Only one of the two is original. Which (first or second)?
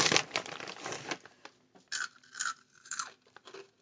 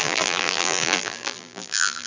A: first